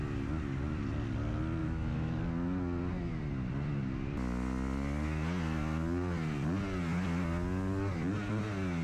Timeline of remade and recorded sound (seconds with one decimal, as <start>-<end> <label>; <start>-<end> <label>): 0.0-1.6 recorded; 1.6-2.2 remade; 2.2-8.8 recorded